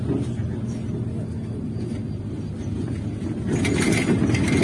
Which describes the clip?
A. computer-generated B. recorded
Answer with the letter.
B